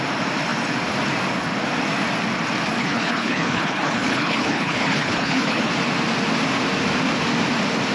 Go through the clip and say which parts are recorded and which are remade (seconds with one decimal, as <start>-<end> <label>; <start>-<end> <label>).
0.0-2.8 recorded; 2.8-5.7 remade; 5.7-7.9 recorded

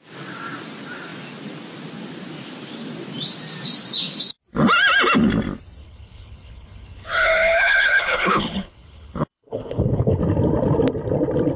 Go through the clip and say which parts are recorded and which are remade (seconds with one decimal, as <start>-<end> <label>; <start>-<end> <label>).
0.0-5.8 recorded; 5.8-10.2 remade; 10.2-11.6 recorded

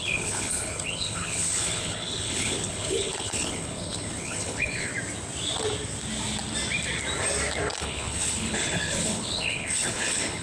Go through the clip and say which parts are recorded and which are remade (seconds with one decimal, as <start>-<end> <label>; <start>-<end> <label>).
0.0-4.9 remade; 4.9-7.8 recorded; 7.8-10.4 remade

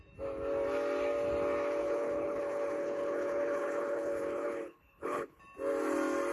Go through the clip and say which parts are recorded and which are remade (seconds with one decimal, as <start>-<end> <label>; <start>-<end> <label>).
0.0-1.8 recorded; 1.8-5.4 remade; 5.4-6.3 recorded

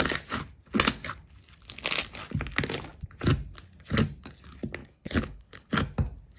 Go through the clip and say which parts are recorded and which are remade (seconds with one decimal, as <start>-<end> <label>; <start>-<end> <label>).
0.0-4.8 recorded; 4.8-5.7 remade; 5.7-6.4 recorded

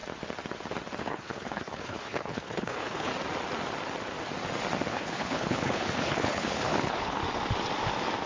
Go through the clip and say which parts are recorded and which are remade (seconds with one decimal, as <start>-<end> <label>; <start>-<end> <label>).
0.0-1.0 recorded; 1.0-3.1 remade; 3.1-4.9 recorded; 4.9-7.2 remade; 7.2-8.3 recorded

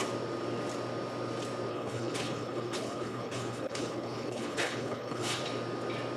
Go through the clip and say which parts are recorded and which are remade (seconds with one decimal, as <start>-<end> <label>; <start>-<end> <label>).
0.0-1.7 recorded; 1.7-5.4 remade; 5.4-6.2 recorded

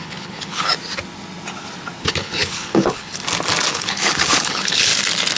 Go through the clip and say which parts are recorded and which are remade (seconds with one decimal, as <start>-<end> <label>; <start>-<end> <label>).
0.0-0.7 remade; 0.7-2.0 recorded; 2.0-3.1 remade; 3.1-3.7 recorded; 3.7-4.9 remade; 4.9-5.4 recorded